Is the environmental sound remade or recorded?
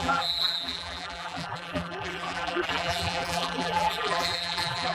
remade